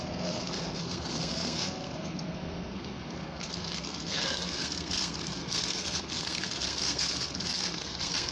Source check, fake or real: fake